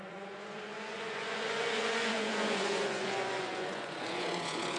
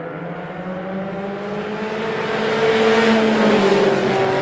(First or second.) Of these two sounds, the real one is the second